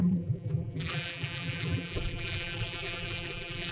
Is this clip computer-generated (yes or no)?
yes